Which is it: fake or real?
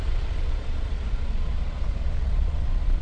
fake